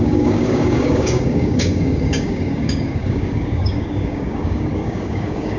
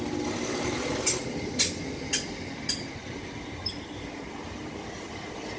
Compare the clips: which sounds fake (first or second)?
first